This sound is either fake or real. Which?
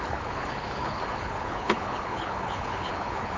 fake